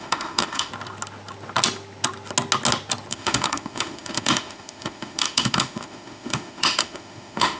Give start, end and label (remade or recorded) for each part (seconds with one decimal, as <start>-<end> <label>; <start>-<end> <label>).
0.0-0.7 remade; 0.7-3.1 recorded; 3.1-7.6 remade